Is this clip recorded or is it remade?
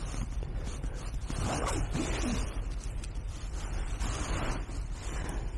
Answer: recorded